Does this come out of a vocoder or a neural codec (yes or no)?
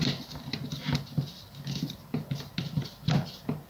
no